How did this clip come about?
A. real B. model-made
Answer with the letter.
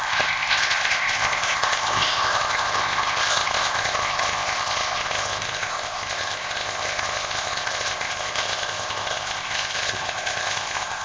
B